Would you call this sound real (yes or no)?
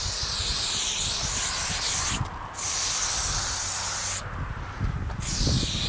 yes